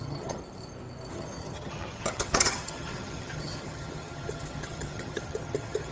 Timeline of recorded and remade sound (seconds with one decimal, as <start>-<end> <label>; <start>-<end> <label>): 0.0-0.4 remade; 0.4-1.1 recorded; 1.1-5.9 remade